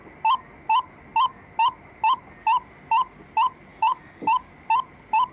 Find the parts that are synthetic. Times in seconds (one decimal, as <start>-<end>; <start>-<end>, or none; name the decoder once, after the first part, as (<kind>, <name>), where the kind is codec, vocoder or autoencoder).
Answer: 3.7-4.5 (codec, DAC)